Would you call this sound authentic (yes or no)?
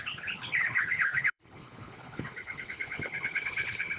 no